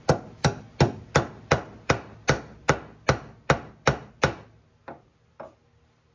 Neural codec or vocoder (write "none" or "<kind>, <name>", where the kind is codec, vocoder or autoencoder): none